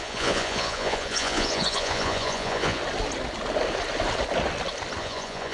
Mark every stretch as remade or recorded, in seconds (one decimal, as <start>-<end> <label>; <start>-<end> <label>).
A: 0.0-2.8 remade; 2.8-5.0 recorded; 5.0-5.5 remade